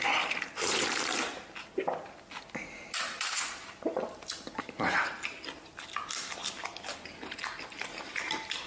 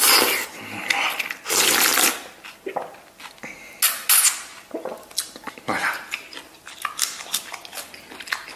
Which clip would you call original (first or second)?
second